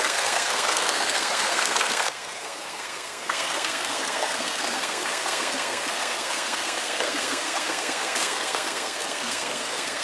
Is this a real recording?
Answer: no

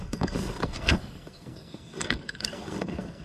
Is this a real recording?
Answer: no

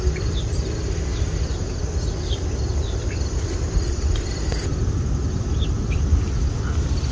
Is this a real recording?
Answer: yes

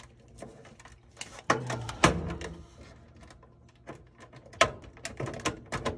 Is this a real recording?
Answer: yes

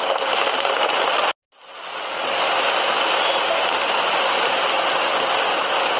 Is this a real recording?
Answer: yes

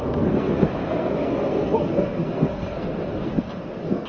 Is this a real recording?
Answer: no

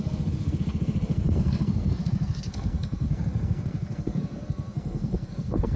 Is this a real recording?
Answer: no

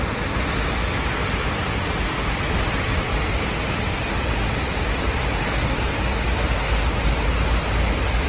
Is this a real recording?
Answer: yes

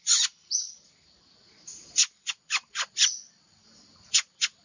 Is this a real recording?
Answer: yes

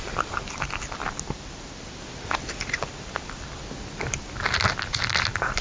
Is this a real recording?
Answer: yes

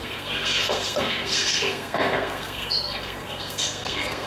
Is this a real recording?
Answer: no